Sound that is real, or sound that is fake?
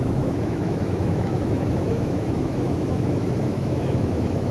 fake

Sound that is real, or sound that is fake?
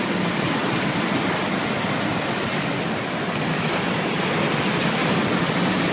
real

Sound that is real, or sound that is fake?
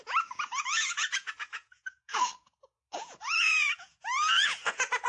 fake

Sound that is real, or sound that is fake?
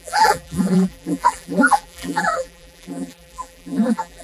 fake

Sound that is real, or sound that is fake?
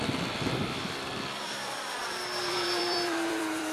fake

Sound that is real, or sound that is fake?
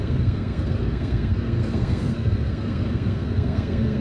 fake